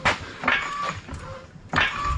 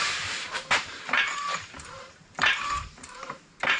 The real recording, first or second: first